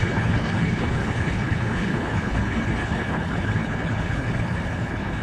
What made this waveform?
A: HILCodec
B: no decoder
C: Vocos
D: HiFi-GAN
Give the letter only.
A